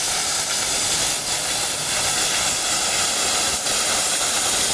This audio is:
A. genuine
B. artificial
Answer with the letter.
A